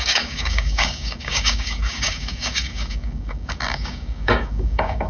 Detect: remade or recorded remade